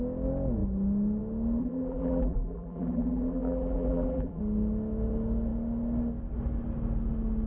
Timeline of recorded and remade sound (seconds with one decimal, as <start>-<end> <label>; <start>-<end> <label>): 0.0-1.6 recorded; 1.6-4.4 remade; 4.4-7.5 recorded